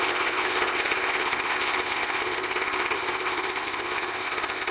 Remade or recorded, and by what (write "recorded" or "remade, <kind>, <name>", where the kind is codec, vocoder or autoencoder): remade, codec, ZipCodec